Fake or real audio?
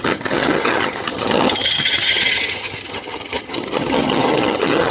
fake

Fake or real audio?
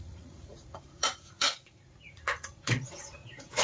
fake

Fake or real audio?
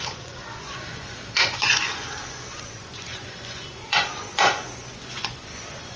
fake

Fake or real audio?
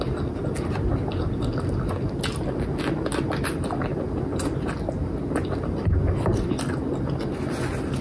real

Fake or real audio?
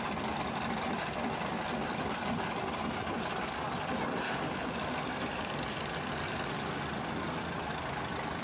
fake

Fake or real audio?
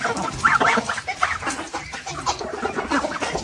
real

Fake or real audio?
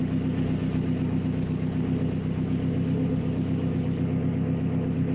real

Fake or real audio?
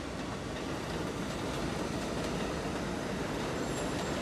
real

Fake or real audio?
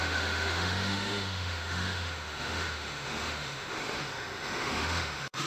fake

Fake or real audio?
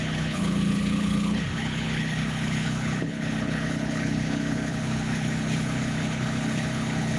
fake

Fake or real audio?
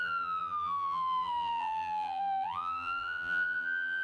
fake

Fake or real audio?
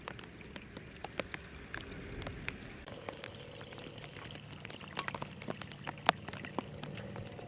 real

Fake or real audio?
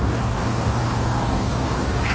fake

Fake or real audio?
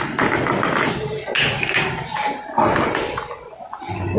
real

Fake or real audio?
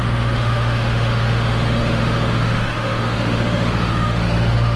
fake